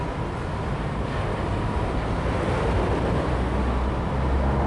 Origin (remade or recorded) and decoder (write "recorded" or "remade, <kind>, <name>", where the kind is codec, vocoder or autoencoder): recorded